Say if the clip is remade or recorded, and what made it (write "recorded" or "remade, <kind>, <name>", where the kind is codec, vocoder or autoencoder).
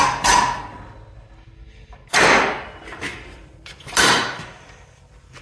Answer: recorded